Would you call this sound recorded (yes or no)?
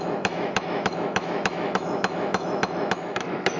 no